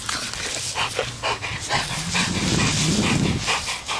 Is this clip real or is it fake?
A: real